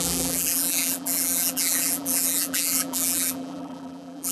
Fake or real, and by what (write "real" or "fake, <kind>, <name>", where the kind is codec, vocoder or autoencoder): fake, vocoder, BigVGAN v2